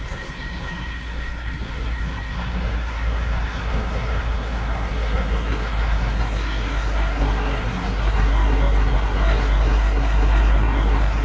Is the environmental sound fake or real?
fake